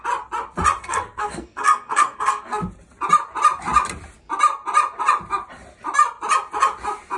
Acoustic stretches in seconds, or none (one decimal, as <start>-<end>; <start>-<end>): 0.0-0.8; 2.6-7.2